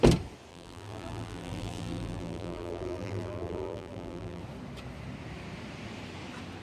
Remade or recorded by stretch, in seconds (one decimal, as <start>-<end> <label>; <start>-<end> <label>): 0.0-0.5 recorded; 0.5-4.4 remade; 4.4-6.6 recorded